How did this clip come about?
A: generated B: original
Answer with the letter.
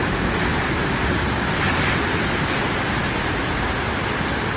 B